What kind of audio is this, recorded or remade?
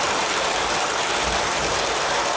recorded